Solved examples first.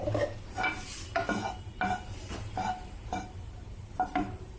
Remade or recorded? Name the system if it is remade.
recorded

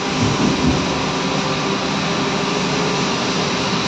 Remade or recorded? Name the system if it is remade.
recorded